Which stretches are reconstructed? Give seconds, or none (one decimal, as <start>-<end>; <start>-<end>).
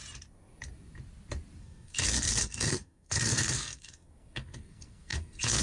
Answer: 1.6-5.6